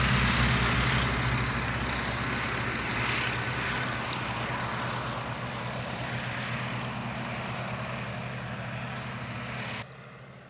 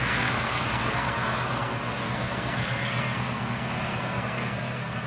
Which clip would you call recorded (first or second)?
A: first